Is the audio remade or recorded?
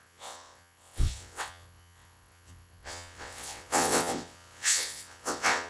remade